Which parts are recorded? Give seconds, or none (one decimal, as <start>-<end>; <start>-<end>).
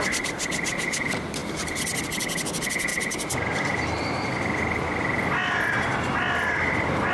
0.0-7.1